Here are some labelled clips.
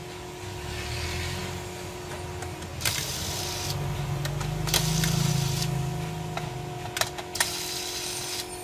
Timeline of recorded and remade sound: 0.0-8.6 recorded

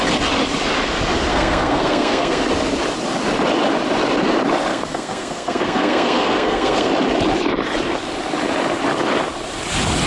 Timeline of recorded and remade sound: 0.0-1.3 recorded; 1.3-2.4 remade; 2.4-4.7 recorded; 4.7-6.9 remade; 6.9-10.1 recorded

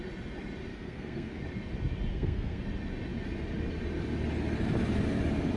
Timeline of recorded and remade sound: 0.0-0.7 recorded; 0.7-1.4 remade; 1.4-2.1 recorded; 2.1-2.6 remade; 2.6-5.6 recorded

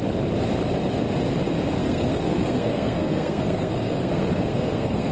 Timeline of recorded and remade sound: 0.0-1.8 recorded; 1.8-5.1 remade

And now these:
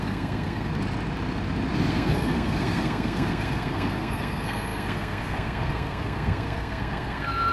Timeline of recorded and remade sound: 0.0-0.7 remade; 0.7-1.9 recorded; 1.9-7.5 remade

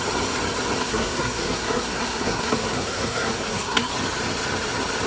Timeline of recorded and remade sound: 0.0-0.8 recorded; 0.8-3.9 remade; 3.9-5.1 recorded

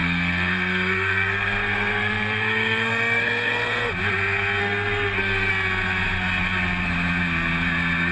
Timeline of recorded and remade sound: 0.0-3.9 remade; 3.9-4.6 recorded; 4.6-5.5 remade; 5.5-8.1 recorded